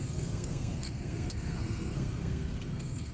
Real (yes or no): no